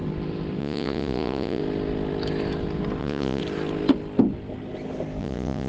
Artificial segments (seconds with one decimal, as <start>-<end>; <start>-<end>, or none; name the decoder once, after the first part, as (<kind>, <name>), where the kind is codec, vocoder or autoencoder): 0.6-1.6 (vocoder, Vocos); 3.0-3.4; 5.2-5.7

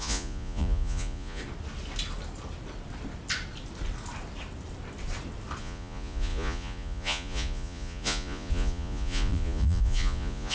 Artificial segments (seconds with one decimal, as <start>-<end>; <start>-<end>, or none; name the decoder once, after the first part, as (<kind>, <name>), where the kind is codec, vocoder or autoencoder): 0.0-1.4 (vocoder, Vocos); 5.6-10.5

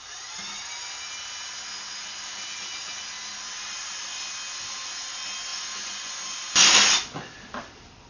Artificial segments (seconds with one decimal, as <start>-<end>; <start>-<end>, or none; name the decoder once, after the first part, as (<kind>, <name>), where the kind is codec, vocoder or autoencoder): 5.5-6.1 (vocoder, Vocos)

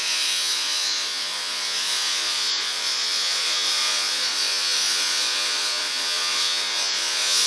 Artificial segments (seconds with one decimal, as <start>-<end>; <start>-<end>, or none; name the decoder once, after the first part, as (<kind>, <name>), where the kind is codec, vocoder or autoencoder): 0.0-7.5 (vocoder, Vocos)